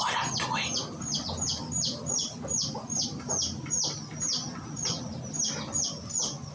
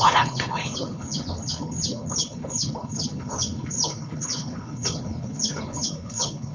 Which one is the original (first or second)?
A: first